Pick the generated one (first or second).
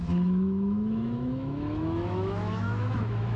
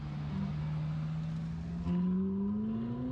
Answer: first